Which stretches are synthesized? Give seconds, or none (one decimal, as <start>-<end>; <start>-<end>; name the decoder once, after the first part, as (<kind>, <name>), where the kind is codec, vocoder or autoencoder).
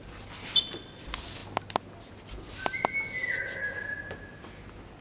none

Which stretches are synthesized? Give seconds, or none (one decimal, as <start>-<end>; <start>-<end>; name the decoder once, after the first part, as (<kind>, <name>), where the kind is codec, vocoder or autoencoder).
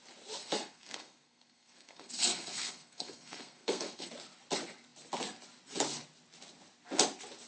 0.4-4.1 (codec, SNAC)